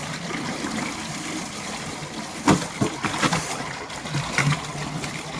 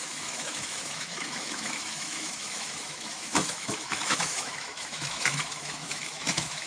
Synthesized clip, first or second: second